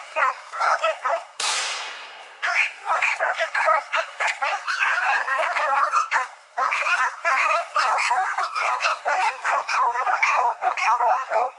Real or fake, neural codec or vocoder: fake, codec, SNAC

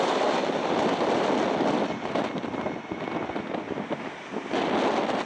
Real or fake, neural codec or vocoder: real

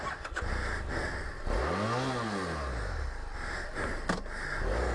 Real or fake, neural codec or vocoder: real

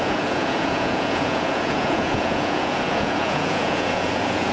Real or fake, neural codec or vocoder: fake, vocoder, Vocos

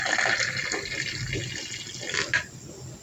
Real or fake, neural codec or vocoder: real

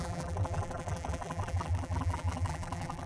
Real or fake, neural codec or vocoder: fake, vocoder, BigVGAN v2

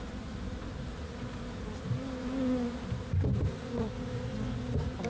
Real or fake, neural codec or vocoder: real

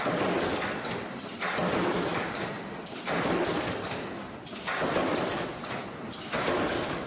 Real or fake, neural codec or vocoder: fake, vocoder, BigVGAN v2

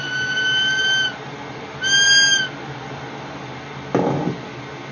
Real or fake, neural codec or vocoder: real